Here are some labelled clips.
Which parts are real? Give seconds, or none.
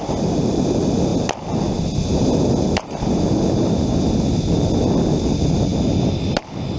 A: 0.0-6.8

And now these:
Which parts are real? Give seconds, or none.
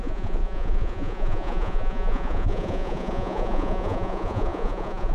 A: none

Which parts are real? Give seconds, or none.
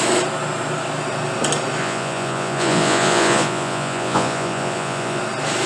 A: 0.0-1.8; 5.2-5.7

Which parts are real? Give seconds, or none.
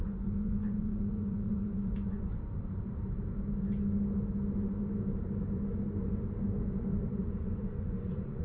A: 2.3-7.2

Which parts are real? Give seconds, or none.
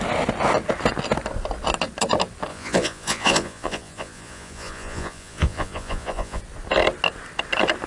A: 0.0-2.5; 6.4-7.9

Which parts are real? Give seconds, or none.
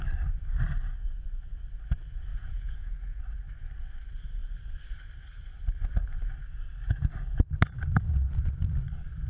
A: 0.0-2.3; 3.2-9.3